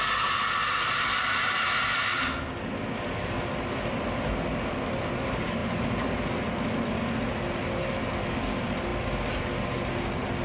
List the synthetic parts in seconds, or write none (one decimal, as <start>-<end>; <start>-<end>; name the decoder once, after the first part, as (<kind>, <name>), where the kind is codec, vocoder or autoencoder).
none